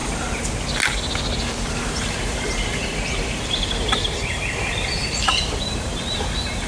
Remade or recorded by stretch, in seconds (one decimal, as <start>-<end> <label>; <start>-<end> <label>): 0.0-1.4 recorded; 1.4-6.7 remade